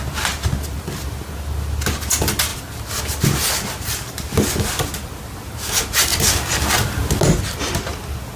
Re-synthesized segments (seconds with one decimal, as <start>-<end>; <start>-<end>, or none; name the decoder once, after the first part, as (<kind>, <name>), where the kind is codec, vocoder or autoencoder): none